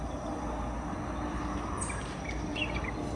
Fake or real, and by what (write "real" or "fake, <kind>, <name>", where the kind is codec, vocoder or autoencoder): real